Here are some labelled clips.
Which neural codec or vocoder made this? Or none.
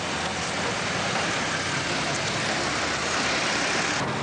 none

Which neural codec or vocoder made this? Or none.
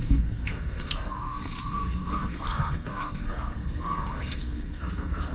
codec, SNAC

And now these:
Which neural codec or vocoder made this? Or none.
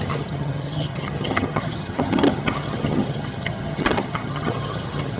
vocoder, HiFi-GAN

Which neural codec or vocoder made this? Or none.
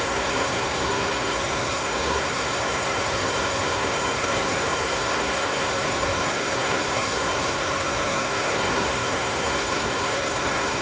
codec, SNAC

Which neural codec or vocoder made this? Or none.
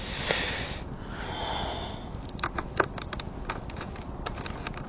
none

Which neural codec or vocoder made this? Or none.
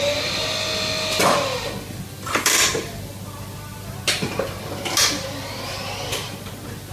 none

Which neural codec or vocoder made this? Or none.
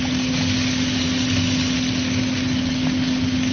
none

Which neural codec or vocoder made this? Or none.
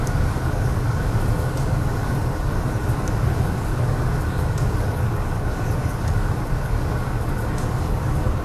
codec, DAC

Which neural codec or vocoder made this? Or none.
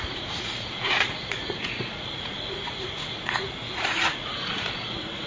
vocoder, Vocos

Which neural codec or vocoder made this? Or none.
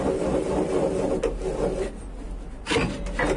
none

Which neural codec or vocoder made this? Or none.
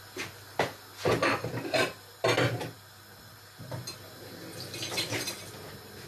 none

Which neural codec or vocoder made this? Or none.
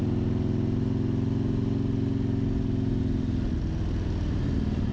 none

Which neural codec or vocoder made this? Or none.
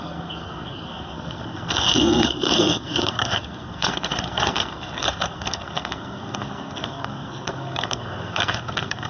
codec, SNAC